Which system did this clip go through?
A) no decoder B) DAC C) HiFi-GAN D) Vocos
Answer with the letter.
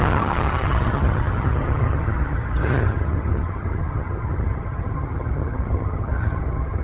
C